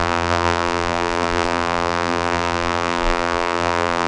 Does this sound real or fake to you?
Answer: fake